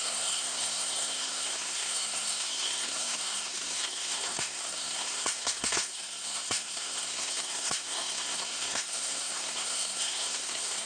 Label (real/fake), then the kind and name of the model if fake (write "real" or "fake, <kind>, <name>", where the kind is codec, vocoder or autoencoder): fake, codec, SNAC